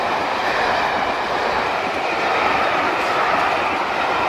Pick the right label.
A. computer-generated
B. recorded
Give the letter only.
B